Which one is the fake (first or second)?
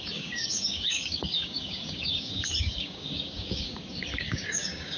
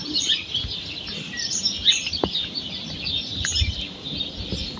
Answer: first